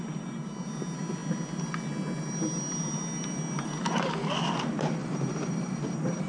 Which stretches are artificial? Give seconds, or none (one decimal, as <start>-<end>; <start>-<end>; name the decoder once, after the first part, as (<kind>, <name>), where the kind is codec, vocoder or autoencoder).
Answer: 5.0-6.3 (vocoder, BigVGAN v2)